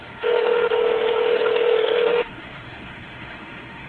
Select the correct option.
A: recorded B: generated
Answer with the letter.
B